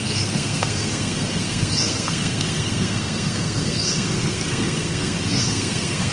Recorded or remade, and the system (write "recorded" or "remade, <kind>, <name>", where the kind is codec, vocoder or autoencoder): remade, codec, SNAC